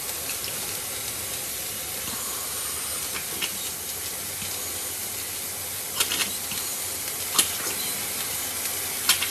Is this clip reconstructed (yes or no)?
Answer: no